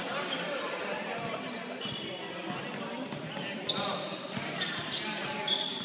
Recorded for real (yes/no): yes